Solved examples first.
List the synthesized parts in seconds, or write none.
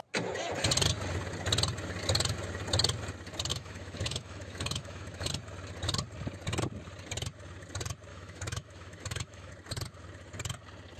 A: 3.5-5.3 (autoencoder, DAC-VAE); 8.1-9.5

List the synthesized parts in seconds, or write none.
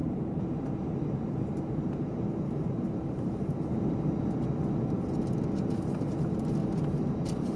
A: 0.0-4.0 (vocoder, BigVGAN v2); 6.6-7.6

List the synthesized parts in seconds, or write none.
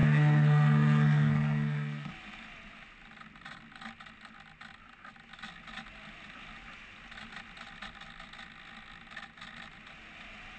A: 0.0-2.1 (codec, SNAC)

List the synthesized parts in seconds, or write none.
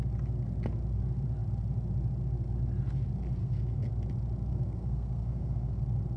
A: 3.4-3.9 (codec, SNAC); 4.5-5.8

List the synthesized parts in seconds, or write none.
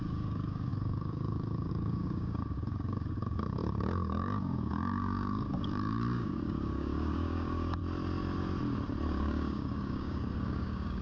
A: 0.0-7.8 (codec, DAC); 9.1-11.0